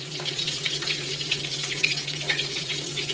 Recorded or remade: remade